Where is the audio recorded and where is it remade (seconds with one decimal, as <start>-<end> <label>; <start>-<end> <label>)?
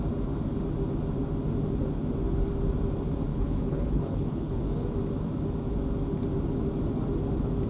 0.0-3.3 recorded; 3.3-4.6 remade; 4.6-7.7 recorded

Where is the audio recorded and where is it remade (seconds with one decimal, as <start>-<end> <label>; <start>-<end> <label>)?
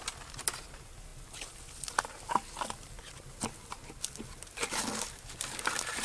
0.0-6.0 recorded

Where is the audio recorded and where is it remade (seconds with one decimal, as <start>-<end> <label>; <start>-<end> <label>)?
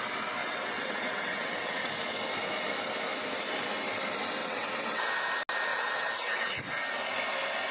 0.0-0.4 recorded; 0.4-1.9 remade; 1.9-4.4 recorded; 4.4-5.1 remade; 5.1-5.7 recorded; 5.7-6.6 remade; 6.6-7.7 recorded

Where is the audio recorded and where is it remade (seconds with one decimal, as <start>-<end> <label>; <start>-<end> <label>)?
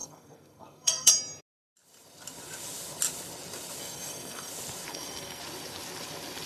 0.0-1.1 remade; 1.1-3.8 recorded; 3.8-4.5 remade; 4.5-4.9 recorded; 4.9-5.4 remade; 5.4-6.5 recorded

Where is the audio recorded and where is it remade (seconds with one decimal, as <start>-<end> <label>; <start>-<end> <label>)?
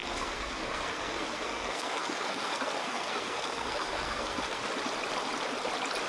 0.0-4.6 remade; 4.6-6.1 recorded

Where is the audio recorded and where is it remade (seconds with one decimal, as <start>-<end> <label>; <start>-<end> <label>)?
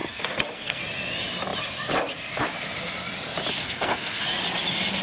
0.0-0.8 remade; 0.8-3.5 recorded; 3.5-4.2 remade; 4.2-5.0 recorded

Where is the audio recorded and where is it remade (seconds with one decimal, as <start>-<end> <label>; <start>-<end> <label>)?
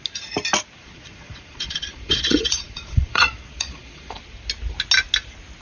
0.0-0.8 recorded; 0.8-4.2 remade; 4.2-5.6 recorded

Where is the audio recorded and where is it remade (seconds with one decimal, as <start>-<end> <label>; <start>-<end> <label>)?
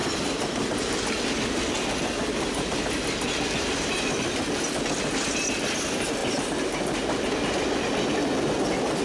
0.0-9.0 recorded